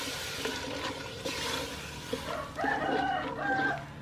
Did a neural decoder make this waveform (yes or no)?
no